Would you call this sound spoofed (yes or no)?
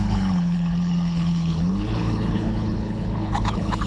yes